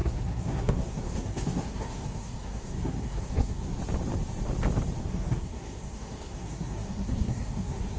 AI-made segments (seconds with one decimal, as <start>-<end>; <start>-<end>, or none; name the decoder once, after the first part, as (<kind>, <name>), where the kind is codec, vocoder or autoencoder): 0.0-3.8 (codec, SNAC); 5.0-8.0